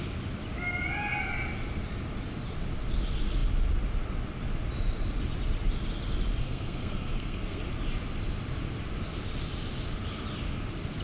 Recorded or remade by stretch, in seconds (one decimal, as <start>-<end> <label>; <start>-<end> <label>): 0.0-6.4 recorded; 6.4-7.6 remade; 7.6-11.0 recorded